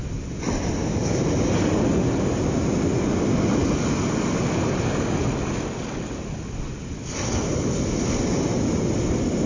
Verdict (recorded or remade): recorded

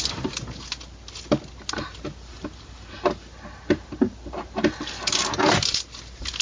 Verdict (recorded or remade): recorded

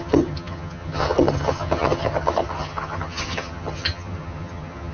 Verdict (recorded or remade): remade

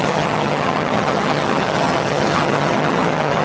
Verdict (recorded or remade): remade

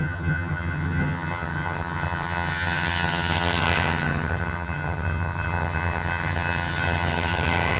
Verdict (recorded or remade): remade